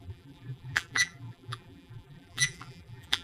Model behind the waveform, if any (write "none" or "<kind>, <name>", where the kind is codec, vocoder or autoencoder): vocoder, BigVGAN v2